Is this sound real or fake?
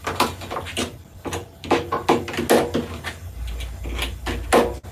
real